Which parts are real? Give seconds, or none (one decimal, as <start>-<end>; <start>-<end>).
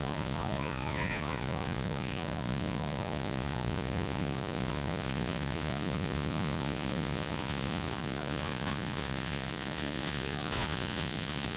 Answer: none